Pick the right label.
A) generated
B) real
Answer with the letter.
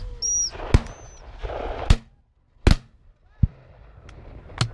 B